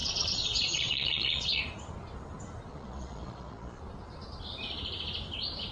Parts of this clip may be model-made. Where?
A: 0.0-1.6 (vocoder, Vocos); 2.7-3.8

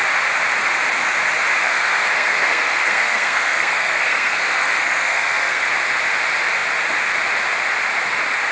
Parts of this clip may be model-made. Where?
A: 1.6-5.6 (codec, SNAC)

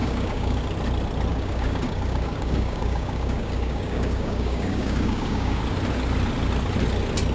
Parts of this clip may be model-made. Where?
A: 0.0-0.6 (codec, DAC); 1.3-5.6